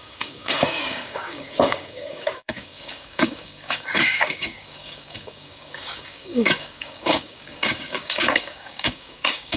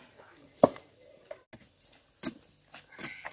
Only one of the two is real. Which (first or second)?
second